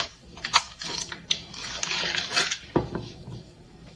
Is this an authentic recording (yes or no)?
no